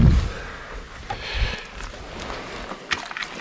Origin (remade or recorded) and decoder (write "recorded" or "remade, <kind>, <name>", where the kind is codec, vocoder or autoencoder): recorded